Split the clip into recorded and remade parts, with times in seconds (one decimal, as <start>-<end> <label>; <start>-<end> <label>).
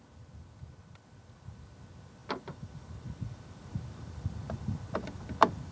0.0-2.2 recorded; 2.2-5.7 remade